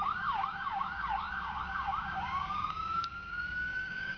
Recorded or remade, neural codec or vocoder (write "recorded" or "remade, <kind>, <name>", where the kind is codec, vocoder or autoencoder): remade, codec, DAC